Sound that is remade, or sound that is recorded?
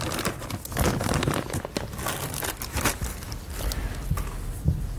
recorded